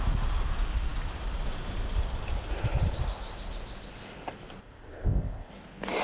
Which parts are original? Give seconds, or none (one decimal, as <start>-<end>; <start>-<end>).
0.0-4.6; 5.5-6.0